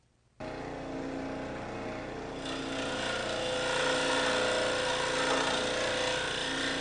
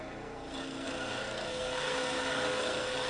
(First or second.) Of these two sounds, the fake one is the second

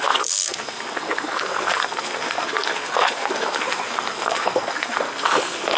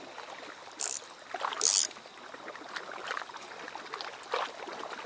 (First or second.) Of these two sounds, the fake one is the first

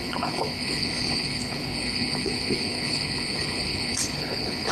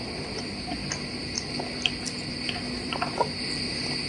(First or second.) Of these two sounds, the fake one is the first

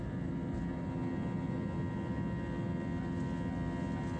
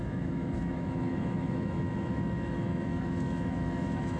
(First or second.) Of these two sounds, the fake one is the second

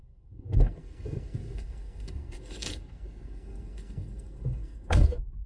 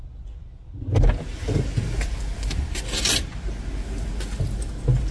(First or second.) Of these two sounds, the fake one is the first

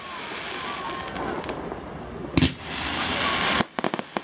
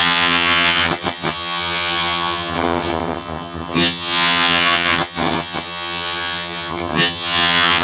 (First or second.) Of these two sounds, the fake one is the second